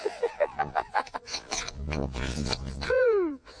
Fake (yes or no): yes